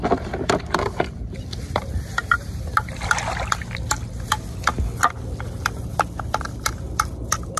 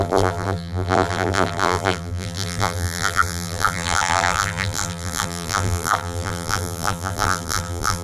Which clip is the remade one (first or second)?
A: second